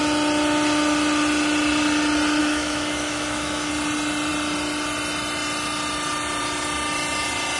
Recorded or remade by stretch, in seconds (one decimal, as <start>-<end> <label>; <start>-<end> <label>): 0.0-2.4 recorded; 2.4-3.7 remade; 3.7-7.6 recorded